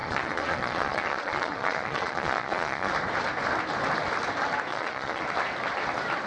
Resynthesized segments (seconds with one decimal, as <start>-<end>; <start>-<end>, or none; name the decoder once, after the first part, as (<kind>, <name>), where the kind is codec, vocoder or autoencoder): 0.0-2.9 (vocoder, Vocos); 4.7-5.2